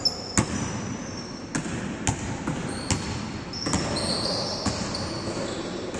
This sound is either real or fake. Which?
real